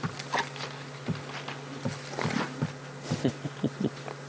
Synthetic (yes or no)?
no